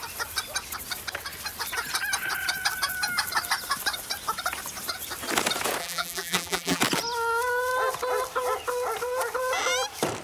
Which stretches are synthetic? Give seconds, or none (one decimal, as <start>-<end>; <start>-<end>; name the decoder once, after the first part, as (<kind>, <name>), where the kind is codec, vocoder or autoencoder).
5.8-6.8 (vocoder, BigVGAN v2)